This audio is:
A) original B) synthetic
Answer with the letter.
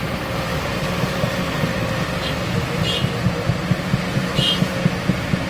A